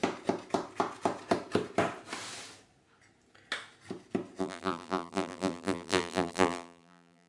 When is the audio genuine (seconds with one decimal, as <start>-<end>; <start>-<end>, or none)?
0.0-4.4